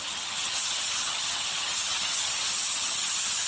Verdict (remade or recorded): remade